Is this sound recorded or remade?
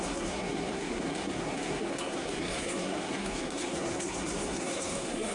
remade